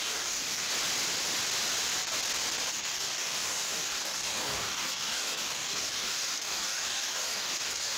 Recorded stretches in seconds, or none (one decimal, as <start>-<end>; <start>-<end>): 0.7-2.7